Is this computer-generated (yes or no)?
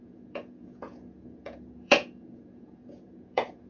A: yes